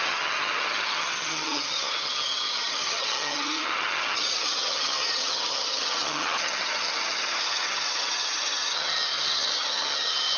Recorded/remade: remade